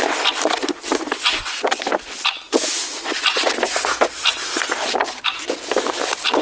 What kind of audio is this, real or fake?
real